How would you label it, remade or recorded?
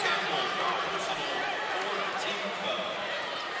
remade